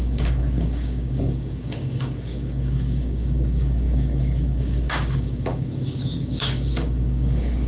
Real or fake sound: fake